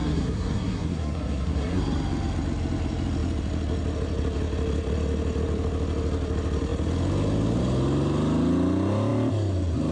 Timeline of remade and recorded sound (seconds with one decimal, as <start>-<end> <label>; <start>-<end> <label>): 0.0-1.8 remade; 1.8-9.9 recorded